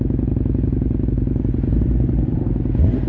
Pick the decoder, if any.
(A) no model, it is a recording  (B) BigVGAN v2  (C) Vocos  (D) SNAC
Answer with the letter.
A